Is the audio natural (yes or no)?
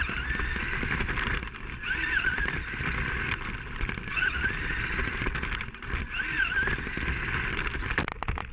yes